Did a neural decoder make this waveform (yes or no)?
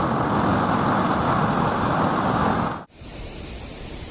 no